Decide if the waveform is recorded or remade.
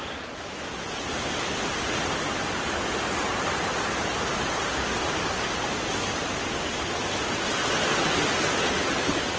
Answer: recorded